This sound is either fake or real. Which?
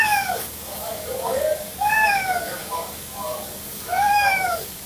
fake